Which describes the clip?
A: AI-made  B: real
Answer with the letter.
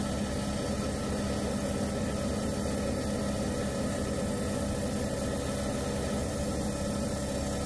B